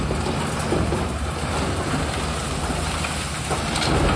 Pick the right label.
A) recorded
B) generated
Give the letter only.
A